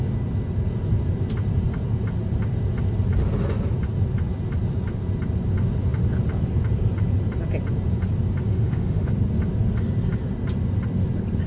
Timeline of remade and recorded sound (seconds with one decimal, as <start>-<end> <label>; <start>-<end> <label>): 0.0-8.5 recorded; 8.5-9.1 remade; 9.1-11.5 recorded